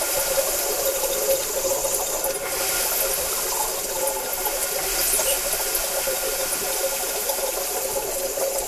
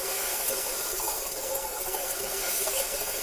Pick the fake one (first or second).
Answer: second